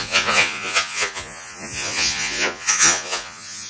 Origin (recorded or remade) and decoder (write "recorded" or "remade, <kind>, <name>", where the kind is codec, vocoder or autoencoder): remade, vocoder, Vocos